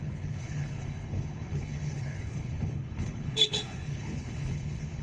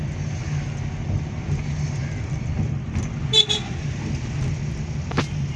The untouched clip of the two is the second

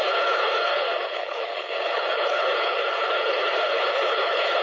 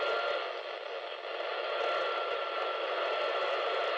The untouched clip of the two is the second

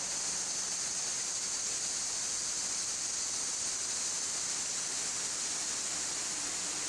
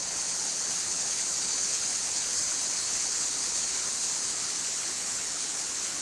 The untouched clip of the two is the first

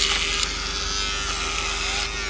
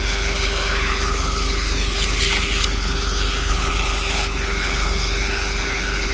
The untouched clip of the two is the first